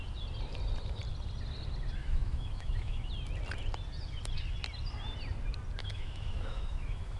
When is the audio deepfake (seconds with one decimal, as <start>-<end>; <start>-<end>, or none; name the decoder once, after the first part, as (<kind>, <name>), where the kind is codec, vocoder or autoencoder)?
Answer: 2.0-3.1 (autoencoder, DAC-VAE); 5.8-7.2